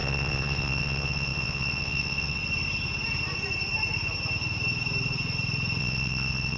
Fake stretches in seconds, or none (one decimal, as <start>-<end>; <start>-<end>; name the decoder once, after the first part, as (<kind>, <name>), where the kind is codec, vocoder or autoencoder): 0.0-2.4 (vocoder, WaveNeXt); 5.8-6.6